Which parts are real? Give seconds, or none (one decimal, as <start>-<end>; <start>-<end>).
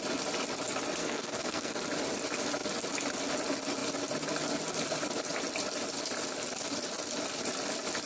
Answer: 0.0-1.0; 1.8-8.1